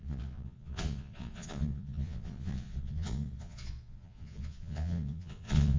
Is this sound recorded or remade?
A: remade